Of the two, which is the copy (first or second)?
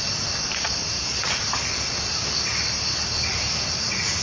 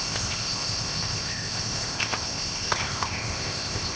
second